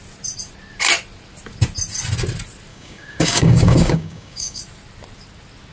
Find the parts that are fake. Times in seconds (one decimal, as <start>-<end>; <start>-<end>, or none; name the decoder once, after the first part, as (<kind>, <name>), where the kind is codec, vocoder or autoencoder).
2.7-4.6 (codec, DAC)